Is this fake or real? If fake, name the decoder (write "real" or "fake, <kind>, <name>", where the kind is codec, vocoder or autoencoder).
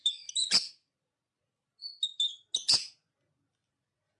real